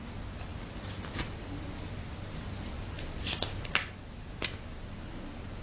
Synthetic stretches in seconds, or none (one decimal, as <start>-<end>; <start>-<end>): none

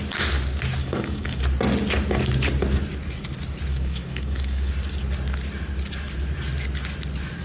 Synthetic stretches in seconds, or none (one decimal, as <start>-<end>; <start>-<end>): 0.8-1.4; 3.7-4.7

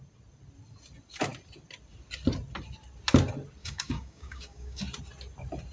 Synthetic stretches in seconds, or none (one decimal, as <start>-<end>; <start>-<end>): 3.6-4.8

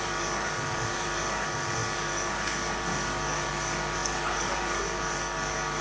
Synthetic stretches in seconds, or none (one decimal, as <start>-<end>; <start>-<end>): 0.0-5.8

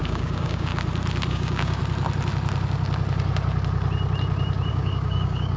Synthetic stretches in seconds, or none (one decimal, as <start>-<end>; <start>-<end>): 0.0-0.7; 1.3-1.8; 4.7-5.6

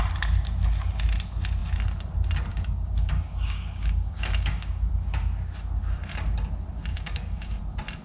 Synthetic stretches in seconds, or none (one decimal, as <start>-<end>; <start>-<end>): 2.5-4.9; 6.9-7.6